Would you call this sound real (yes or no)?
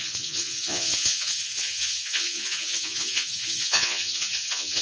no